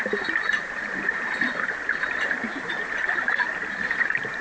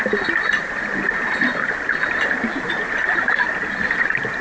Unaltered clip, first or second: second